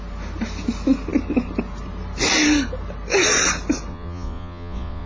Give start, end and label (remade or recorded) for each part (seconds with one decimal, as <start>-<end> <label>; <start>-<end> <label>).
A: 0.0-3.9 recorded; 3.9-5.1 remade